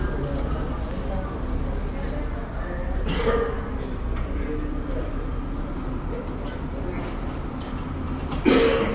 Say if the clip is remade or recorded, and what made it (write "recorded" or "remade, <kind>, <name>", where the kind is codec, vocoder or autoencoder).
recorded